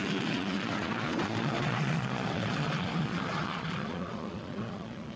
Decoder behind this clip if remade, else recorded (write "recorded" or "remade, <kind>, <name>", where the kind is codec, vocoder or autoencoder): remade, vocoder, Vocos